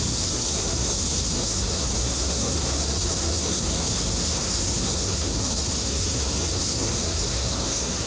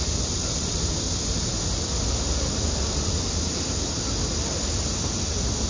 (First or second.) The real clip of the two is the second